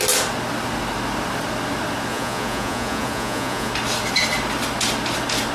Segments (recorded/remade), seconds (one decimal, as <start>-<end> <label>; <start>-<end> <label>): 0.0-2.1 recorded; 2.1-3.7 remade; 3.7-5.5 recorded